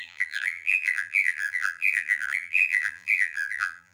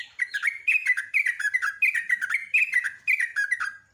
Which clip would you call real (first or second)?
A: second